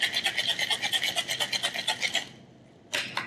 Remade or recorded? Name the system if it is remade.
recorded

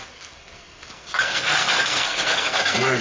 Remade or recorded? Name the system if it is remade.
remade, codec, SNAC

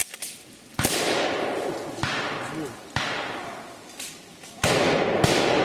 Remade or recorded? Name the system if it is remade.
recorded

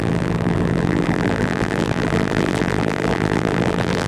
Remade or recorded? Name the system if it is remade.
remade, vocoder, BigVGAN v2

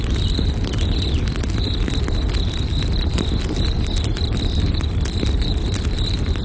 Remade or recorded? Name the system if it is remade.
recorded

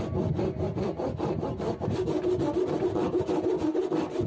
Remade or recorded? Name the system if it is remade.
recorded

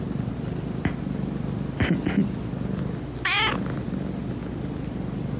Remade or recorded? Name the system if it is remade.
recorded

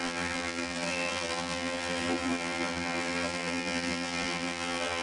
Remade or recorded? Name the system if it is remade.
remade, vocoder, BigVGAN v2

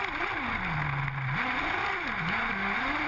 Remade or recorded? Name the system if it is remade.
recorded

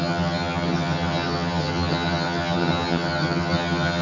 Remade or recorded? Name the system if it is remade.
remade, vocoder, HiFi-GAN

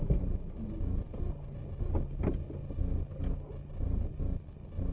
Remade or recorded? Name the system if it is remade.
recorded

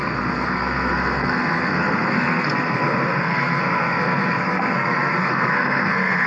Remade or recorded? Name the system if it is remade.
remade, codec, SNAC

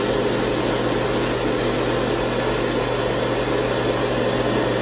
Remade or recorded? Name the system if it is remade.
recorded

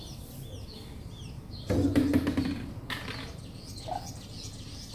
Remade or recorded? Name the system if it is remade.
recorded